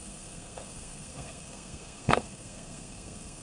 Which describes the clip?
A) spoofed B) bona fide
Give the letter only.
A